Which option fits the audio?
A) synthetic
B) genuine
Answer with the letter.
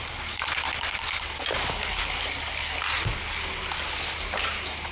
B